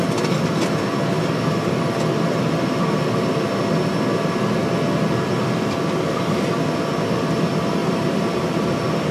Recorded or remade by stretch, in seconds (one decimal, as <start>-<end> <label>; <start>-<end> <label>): 0.0-7.8 recorded; 7.8-8.5 remade; 8.5-9.1 recorded